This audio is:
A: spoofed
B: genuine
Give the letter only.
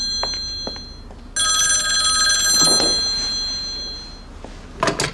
B